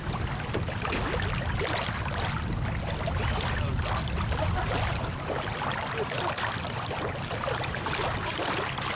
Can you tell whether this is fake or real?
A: real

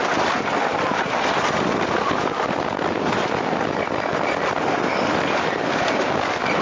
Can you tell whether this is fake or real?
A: real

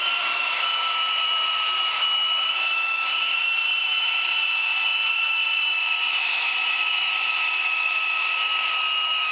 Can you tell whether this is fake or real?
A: fake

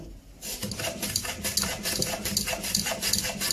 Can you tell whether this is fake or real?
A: real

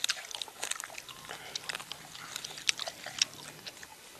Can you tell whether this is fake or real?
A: real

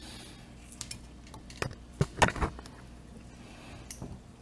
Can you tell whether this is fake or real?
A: real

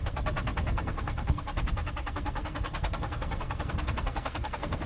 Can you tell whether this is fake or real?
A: fake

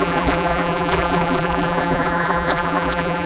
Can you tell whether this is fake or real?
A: fake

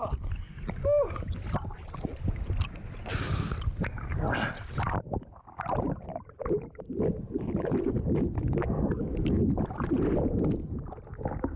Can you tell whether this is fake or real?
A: real